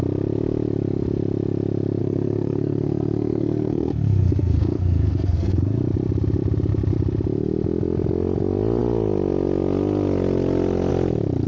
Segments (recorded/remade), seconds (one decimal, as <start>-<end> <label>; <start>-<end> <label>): 0.0-2.0 recorded; 2.0-5.8 remade; 5.8-11.5 recorded